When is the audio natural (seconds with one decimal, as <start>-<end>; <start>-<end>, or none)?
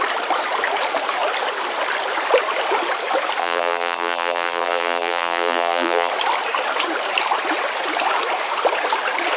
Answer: 0.0-3.4; 6.1-9.4